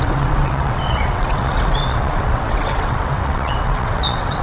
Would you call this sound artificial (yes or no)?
yes